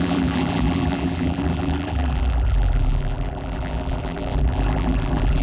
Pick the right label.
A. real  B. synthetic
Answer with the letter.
B